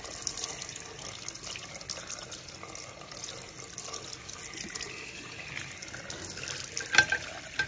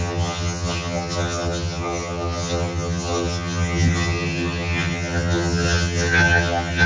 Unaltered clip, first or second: first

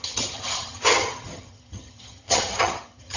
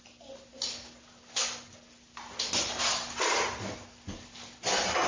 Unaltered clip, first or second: second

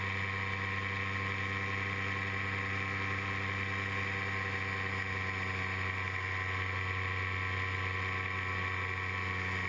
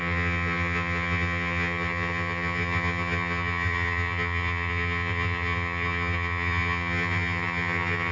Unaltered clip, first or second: first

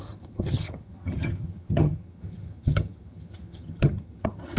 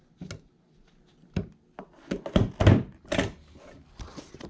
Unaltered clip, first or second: second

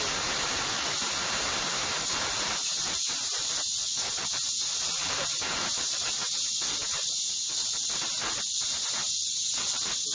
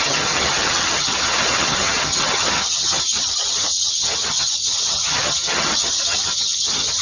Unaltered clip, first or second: first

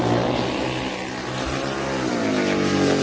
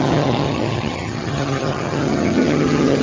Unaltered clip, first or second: first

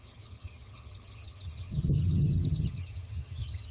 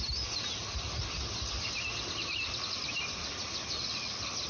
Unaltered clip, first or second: second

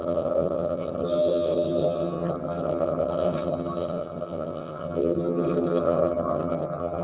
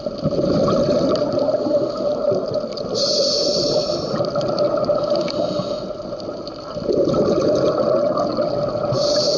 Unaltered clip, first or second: second